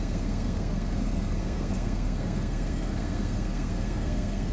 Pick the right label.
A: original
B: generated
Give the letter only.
B